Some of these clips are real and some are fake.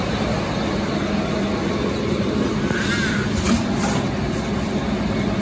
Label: real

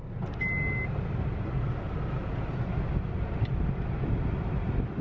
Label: real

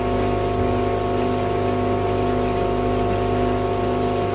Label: real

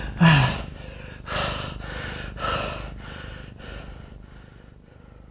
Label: real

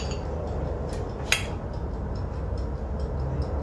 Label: real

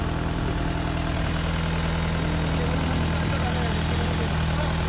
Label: real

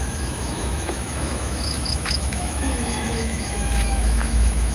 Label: fake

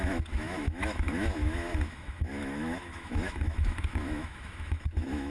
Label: fake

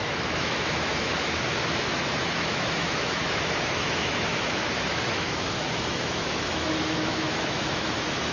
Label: fake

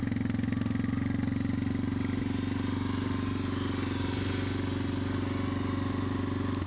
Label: real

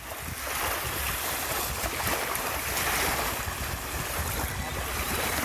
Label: real